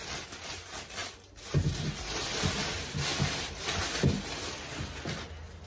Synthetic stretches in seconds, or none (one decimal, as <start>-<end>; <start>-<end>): none